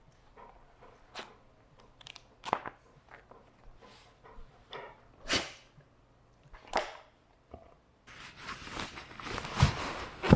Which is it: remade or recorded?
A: recorded